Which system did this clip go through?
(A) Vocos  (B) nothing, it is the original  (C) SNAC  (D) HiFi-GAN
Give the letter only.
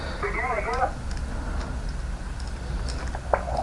B